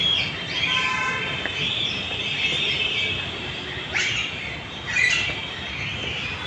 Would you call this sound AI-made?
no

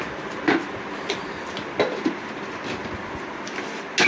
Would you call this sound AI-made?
no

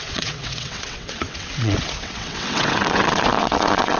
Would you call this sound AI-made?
yes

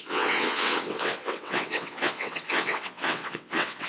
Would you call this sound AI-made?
yes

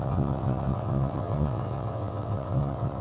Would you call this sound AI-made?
yes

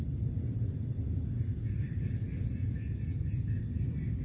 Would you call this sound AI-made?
no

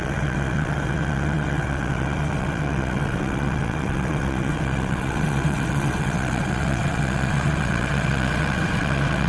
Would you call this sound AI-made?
yes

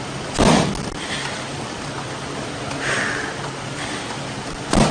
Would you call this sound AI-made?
no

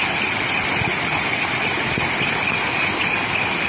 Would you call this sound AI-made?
no